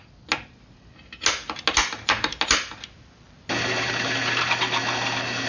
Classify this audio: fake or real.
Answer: real